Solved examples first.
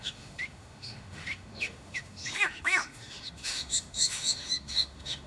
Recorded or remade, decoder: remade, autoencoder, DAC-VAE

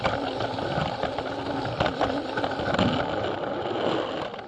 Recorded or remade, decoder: recorded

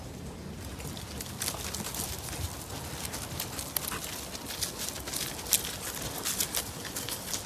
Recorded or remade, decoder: recorded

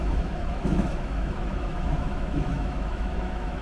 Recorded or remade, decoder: remade, autoencoder, DAC-VAE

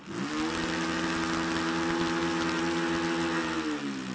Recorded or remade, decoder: recorded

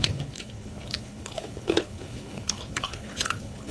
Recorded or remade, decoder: remade, codec, HILCodec